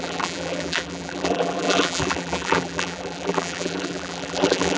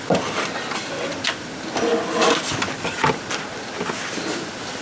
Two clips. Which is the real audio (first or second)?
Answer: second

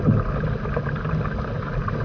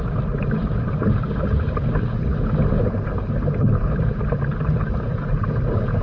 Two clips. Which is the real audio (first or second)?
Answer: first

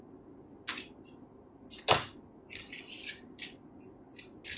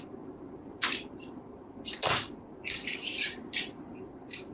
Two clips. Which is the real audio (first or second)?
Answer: first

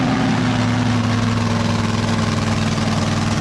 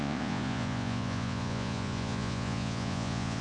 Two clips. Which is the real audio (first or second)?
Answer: first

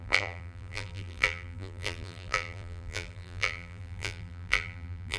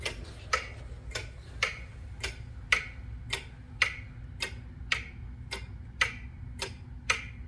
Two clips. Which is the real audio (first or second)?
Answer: second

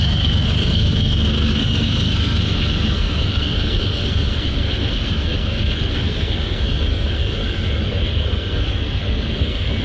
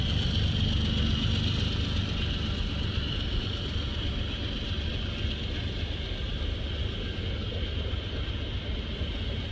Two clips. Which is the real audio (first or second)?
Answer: second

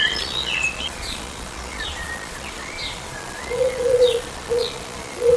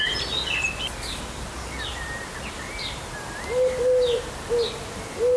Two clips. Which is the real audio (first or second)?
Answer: second